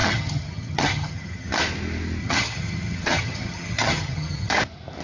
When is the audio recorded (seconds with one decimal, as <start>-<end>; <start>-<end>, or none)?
1.5-2.2; 4.5-5.0